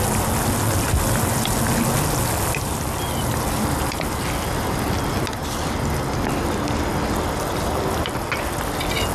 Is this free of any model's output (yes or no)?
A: yes